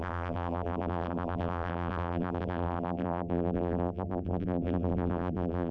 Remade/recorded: remade